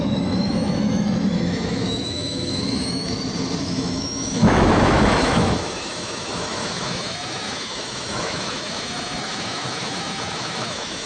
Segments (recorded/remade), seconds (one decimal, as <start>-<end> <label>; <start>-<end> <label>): 0.0-3.1 remade; 3.1-3.6 recorded; 3.6-11.1 remade

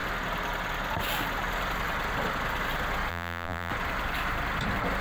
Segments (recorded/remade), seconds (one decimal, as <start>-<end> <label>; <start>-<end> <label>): 0.0-3.1 recorded; 3.1-3.7 remade; 3.7-5.0 recorded

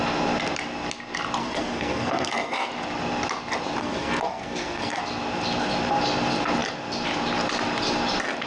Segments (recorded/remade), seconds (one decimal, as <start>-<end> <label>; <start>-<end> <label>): 0.0-1.4 recorded; 1.4-2.7 remade; 2.7-3.8 recorded; 3.8-5.0 remade; 5.0-8.5 recorded

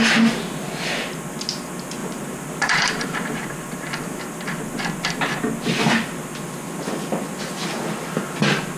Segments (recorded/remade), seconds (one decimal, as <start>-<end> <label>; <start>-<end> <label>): 0.0-2.0 recorded; 2.0-4.2 remade; 4.2-8.8 recorded

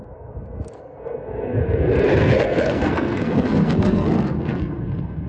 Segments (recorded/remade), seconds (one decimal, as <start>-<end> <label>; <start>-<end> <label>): 0.0-5.3 remade

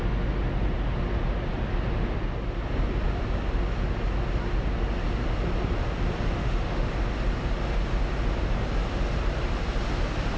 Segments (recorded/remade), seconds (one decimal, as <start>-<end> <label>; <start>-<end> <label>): 0.0-6.4 recorded; 6.4-6.9 remade; 6.9-10.4 recorded